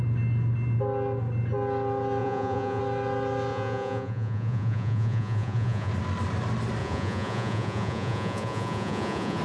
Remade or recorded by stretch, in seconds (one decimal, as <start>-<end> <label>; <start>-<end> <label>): 0.0-2.2 recorded; 2.2-2.8 remade; 2.8-3.5 recorded; 3.5-5.9 remade; 5.9-6.8 recorded; 6.8-9.4 remade

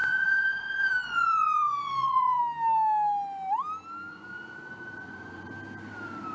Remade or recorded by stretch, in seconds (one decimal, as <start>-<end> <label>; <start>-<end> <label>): 0.0-2.4 remade; 2.4-4.1 recorded; 4.1-5.5 remade; 5.5-6.3 recorded

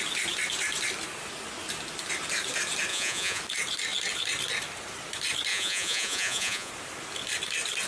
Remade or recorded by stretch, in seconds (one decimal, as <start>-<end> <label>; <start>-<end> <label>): 0.0-2.9 recorded; 2.9-3.4 remade; 3.4-5.5 recorded; 5.5-6.7 remade; 6.7-7.9 recorded

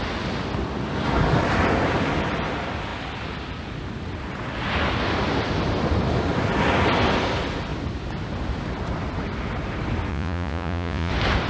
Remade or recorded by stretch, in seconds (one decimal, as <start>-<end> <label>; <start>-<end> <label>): 0.0-10.1 recorded; 10.1-11.1 remade; 11.1-11.5 recorded